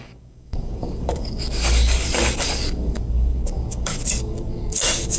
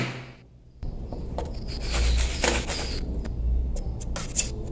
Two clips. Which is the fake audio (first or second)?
first